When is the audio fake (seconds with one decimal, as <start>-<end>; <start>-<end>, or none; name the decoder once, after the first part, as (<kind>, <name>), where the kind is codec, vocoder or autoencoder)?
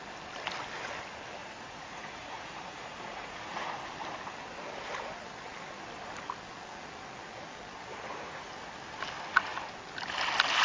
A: 1.4-3.7 (vocoder, Vocos); 7.9-8.5